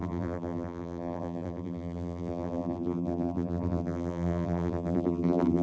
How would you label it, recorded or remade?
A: remade